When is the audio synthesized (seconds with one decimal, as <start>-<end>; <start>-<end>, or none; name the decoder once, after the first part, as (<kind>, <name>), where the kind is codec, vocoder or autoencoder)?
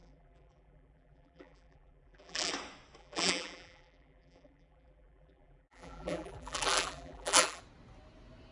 0.0-2.5 (vocoder, BigVGAN v2); 3.0-7.6